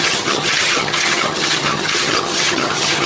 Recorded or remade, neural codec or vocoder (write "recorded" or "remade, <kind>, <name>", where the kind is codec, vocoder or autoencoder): remade, vocoder, HiFi-GAN